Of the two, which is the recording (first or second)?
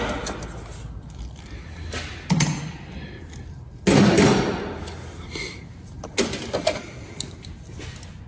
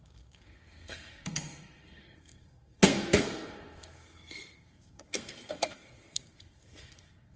first